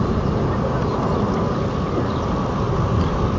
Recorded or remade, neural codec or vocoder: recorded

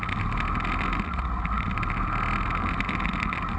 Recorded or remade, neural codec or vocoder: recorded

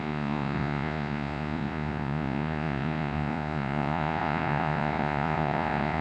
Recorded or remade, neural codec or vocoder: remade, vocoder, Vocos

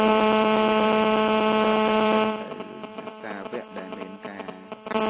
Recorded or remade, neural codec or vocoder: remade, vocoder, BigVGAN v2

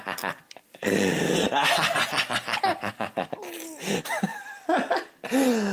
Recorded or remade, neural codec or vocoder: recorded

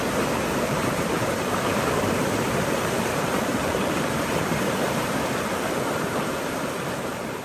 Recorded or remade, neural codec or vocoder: remade, vocoder, BigVGAN v2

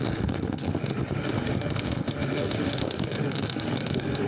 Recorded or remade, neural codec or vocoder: remade, autoencoder, DAC-VAE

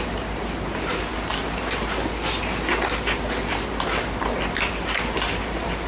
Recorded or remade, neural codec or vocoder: remade, vocoder, BigVGAN v2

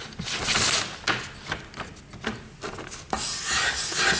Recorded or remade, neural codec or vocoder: recorded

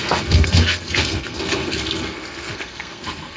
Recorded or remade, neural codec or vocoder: remade, codec, SNAC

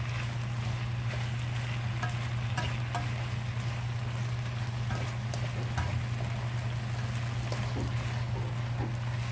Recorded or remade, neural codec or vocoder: recorded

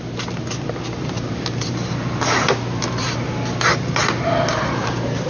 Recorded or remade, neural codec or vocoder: recorded